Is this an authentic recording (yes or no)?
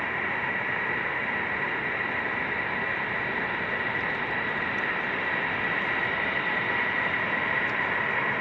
yes